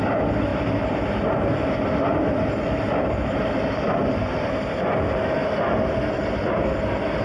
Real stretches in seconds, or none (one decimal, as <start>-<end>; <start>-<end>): 0.0-7.2